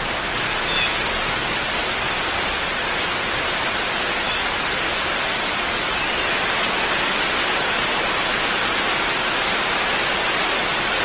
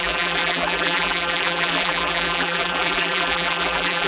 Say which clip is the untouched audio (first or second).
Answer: first